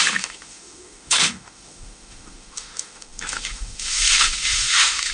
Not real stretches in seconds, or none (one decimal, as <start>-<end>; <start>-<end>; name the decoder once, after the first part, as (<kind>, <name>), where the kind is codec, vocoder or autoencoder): 0.0-5.1 (autoencoder, DAC-VAE)